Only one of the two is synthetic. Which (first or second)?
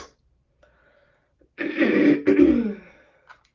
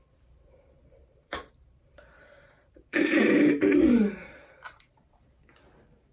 second